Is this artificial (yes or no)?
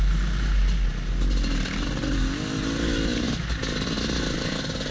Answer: no